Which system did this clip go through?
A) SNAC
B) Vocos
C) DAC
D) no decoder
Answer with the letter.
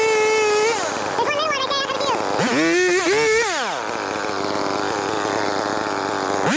D